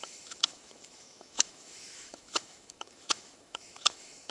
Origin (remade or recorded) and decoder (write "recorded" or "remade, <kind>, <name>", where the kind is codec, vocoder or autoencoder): remade, autoencoder, DAC-VAE